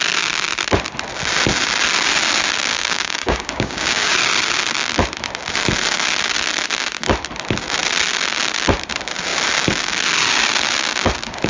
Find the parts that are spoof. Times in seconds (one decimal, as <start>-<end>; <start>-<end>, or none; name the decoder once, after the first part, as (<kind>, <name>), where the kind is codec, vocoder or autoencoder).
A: 2.7-4.1 (codec, DAC)